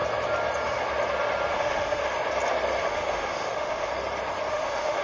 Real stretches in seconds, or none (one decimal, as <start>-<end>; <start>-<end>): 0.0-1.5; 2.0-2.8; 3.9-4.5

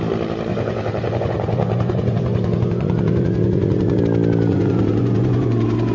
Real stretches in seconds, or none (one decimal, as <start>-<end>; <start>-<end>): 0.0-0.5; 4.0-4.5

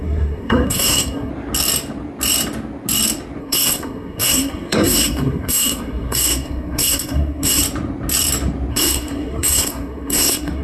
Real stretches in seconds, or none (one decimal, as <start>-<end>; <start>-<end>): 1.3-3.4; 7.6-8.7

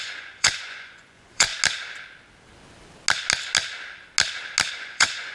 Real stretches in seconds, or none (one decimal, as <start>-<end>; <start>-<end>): 1.5-4.7

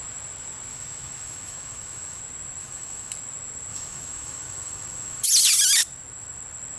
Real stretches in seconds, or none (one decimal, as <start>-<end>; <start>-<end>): 0.0-0.7; 2.2-2.6; 3.1-3.7; 5.3-6.8

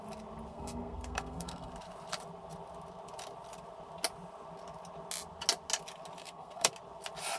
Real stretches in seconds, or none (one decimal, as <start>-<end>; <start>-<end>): 0.0-0.5; 1.7-6.2; 6.7-7.4

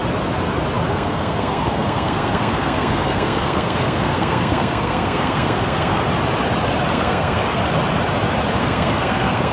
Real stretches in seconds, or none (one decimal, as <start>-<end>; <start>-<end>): 0.0-0.9; 6.0-6.9; 7.6-8.6